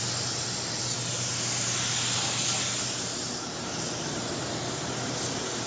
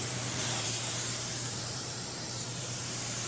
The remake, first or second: second